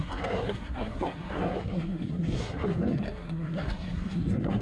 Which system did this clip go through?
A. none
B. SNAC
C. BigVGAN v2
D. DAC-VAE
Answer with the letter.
B